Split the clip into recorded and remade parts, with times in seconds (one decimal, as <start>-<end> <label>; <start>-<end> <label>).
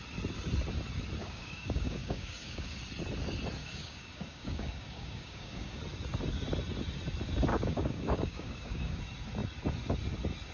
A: 0.0-1.2 recorded; 1.2-2.8 remade; 2.8-3.6 recorded; 3.6-5.8 remade; 5.8-7.5 recorded; 7.5-9.0 remade; 9.0-10.5 recorded